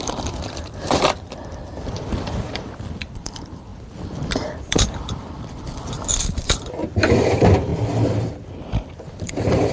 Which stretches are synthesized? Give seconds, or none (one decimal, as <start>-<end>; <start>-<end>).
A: 0.0-3.7; 4.7-6.8; 7.3-7.7; 8.8-9.7